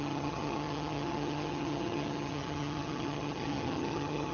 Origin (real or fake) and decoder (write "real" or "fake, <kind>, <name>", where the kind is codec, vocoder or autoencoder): fake, vocoder, HiFi-GAN